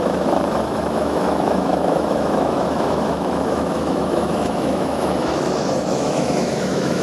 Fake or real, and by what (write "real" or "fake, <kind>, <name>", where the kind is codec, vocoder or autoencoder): fake, autoencoder, DAC-VAE